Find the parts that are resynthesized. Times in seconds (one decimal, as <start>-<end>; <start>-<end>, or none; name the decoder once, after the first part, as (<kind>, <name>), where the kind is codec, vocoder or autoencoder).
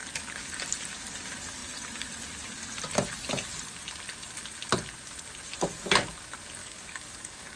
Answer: 6.6-7.6 (codec, DAC)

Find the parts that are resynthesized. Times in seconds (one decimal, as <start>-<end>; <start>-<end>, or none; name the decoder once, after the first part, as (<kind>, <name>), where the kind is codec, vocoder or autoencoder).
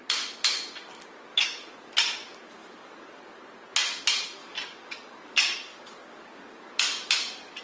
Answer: 1.3-1.9 (codec, DAC); 2.6-3.2; 4.4-7.1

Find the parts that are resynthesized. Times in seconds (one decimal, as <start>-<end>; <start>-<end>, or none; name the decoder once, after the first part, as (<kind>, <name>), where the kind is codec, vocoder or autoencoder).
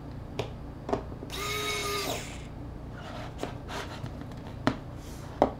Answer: none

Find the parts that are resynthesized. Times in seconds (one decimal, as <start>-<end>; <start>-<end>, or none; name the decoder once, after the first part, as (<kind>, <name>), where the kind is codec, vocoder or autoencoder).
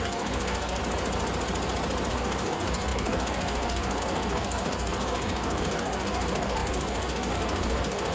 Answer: 0.0-0.8 (codec, DAC); 2.1-8.1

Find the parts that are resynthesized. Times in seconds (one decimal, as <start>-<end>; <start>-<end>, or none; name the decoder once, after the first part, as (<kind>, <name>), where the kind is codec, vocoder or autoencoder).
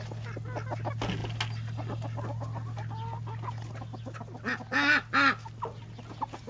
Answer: none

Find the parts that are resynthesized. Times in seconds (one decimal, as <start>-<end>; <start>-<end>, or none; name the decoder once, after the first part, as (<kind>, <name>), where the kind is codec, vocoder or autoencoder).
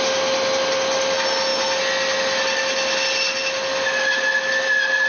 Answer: none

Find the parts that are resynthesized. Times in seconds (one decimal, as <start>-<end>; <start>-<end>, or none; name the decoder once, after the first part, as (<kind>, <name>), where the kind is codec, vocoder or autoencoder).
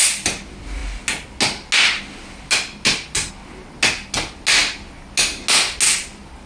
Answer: none